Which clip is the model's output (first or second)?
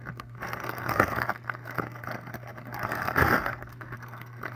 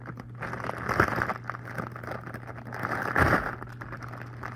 first